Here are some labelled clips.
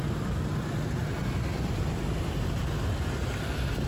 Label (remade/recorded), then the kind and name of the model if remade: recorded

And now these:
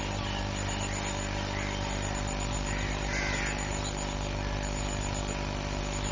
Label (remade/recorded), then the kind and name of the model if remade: recorded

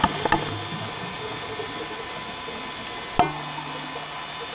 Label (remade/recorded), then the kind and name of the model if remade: recorded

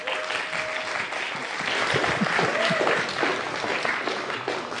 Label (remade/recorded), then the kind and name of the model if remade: recorded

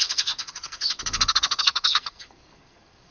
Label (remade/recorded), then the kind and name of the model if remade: remade, codec, SNAC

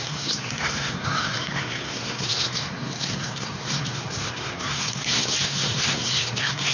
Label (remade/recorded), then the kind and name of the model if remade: remade, codec, SNAC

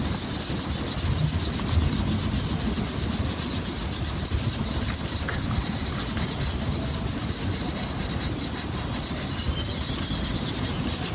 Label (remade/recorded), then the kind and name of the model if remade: recorded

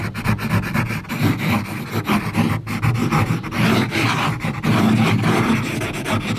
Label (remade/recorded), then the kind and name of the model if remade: recorded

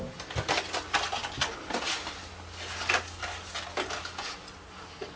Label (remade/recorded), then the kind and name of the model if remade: recorded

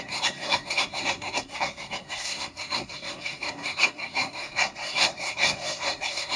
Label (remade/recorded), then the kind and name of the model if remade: remade, codec, SNAC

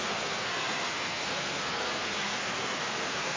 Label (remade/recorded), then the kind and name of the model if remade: remade, codec, SNAC